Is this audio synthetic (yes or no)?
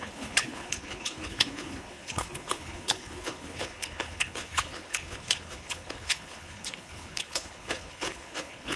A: yes